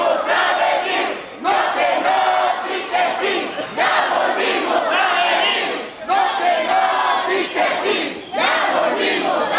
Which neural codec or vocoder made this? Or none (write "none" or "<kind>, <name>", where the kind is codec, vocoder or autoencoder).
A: none